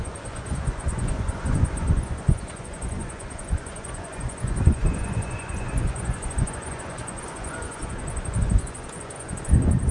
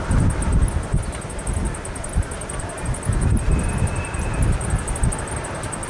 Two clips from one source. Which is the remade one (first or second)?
first